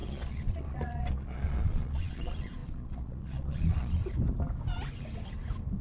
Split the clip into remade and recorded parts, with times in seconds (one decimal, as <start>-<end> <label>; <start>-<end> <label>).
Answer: 0.0-4.0 remade; 4.0-5.8 recorded